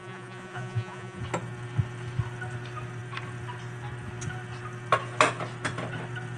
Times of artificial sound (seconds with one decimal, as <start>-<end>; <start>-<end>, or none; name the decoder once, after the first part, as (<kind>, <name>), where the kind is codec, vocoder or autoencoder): 0.0-1.2 (vocoder, Vocos)

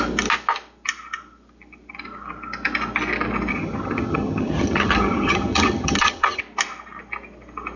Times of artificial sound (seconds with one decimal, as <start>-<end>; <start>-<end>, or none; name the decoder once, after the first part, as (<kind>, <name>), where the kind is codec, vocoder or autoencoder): 3.5-6.4 (vocoder, HiFi-GAN)

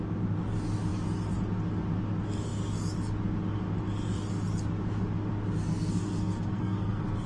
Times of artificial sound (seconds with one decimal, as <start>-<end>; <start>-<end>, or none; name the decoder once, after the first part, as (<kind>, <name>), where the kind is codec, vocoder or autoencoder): 5.7-7.3 (codec, SNAC)

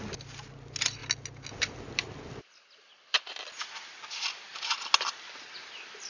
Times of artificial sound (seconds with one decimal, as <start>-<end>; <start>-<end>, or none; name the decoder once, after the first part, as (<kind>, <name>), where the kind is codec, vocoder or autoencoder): none

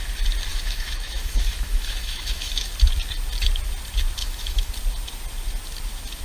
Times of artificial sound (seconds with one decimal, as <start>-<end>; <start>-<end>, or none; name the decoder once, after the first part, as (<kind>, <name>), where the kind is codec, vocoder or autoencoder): 0.5-2.7 (autoencoder, DAC-VAE); 4.2-4.7

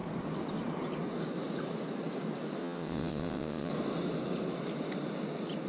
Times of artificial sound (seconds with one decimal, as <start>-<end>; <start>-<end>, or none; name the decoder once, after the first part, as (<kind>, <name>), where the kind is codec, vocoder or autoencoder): 2.6-3.7 (vocoder, WaveNeXt)

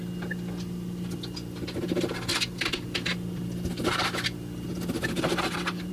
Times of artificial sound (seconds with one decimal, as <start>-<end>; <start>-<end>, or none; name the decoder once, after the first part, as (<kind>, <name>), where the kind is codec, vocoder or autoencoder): 2.3-5.9 (vocoder, BigVGAN v2)